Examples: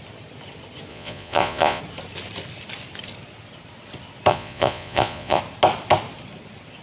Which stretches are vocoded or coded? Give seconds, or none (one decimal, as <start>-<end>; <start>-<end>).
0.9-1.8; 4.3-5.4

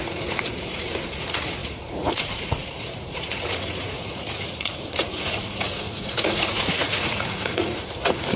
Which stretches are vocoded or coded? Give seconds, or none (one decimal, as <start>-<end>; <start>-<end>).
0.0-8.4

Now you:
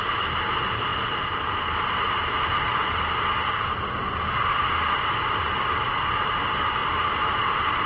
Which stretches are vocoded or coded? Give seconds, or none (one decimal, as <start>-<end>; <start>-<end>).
none

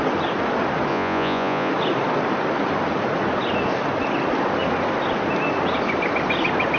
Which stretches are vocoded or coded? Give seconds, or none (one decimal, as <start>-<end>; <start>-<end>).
0.9-1.7

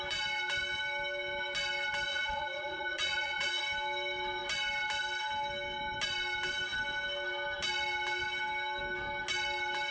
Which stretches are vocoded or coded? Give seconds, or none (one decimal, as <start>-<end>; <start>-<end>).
2.1-3.6